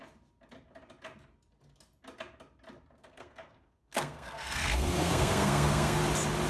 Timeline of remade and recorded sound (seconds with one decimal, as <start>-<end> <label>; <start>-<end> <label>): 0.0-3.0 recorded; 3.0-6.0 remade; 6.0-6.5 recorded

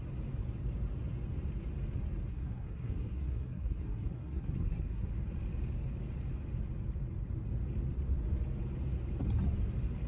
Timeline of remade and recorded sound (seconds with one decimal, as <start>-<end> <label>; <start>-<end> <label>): 0.0-2.3 recorded; 2.3-5.1 remade; 5.1-10.1 recorded

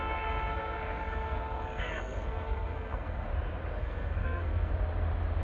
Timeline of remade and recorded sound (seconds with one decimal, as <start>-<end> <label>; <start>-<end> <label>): 0.0-3.3 remade; 3.3-3.8 recorded; 3.8-4.7 remade; 4.7-5.4 recorded

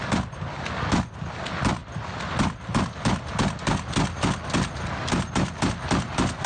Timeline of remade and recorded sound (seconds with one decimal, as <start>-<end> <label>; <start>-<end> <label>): 0.0-6.5 recorded